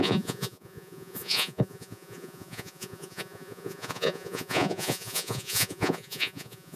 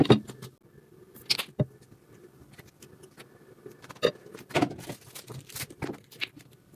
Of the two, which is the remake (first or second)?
first